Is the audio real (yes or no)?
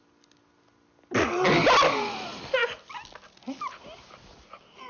yes